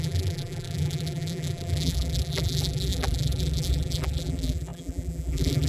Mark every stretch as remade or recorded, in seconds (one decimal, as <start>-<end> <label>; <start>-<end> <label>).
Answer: 0.0-5.7 remade